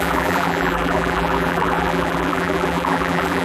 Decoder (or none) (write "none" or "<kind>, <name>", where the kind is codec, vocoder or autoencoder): vocoder, BigVGAN v2